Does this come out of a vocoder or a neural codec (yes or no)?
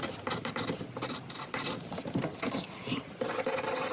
no